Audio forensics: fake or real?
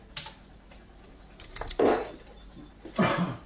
real